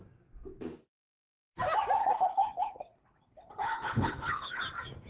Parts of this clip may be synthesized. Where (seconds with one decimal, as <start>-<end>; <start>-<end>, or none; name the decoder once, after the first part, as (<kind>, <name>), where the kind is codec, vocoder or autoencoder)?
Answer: 2.0-4.6 (codec, HILCodec)